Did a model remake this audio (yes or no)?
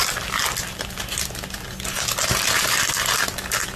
no